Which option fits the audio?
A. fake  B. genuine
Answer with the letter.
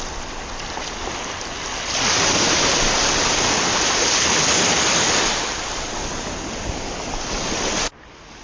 B